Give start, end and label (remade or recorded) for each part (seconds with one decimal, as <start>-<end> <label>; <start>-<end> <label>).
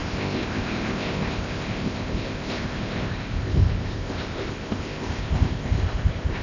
0.0-6.4 remade